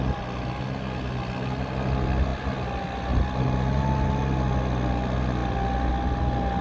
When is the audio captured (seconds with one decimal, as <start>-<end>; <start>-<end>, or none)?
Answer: 0.0-6.6